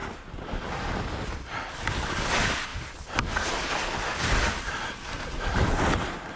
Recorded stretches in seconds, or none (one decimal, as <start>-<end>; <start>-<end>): 0.0-6.4